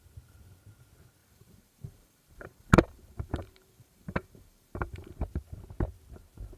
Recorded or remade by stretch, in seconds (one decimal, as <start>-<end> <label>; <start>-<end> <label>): 0.0-1.2 recorded; 1.2-5.2 remade; 5.2-6.6 recorded